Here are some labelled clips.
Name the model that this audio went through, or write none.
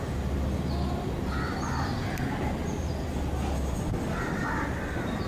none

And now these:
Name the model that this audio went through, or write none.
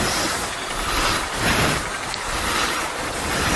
none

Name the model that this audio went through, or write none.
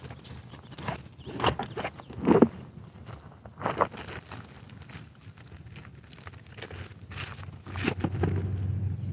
none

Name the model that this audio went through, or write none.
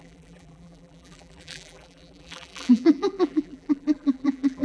vocoder, BigVGAN v2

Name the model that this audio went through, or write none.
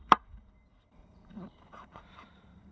vocoder, BigVGAN v2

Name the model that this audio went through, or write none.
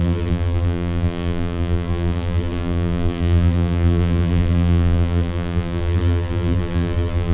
vocoder, BigVGAN v2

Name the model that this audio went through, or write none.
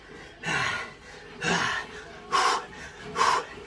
none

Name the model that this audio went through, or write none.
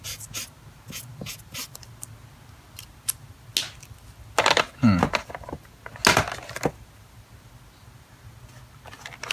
none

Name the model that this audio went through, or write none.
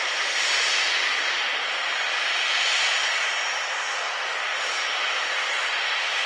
none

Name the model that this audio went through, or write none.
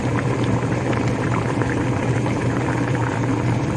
vocoder, BigVGAN v2